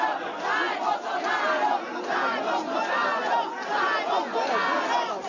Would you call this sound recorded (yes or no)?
yes